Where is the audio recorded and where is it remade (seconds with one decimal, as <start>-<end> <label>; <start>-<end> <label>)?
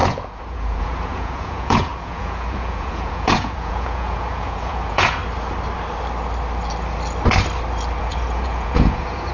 0.0-5.2 remade; 5.2-8.0 recorded; 8.0-9.3 remade